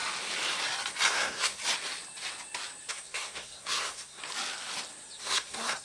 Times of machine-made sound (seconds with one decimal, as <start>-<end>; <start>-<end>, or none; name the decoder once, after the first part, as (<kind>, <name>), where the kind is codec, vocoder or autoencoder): 1.1-1.6 (codec, SNAC); 2.9-4.2; 5.2-5.8